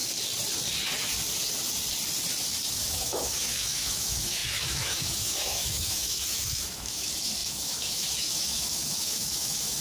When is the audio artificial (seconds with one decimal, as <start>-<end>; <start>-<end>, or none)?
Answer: 2.7-9.8